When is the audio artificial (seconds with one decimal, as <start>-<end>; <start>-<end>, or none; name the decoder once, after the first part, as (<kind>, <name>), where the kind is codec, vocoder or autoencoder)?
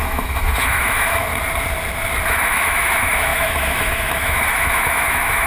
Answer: 0.0-1.3 (autoencoder, DAC-VAE); 2.3-5.5